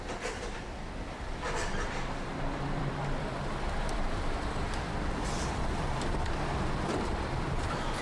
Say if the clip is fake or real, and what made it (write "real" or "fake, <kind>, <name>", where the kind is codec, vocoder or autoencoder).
fake, vocoder, BigVGAN v2